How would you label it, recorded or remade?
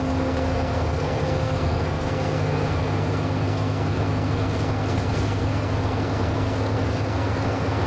remade